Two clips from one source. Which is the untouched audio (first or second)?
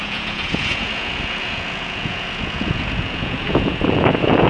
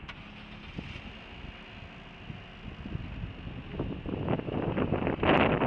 second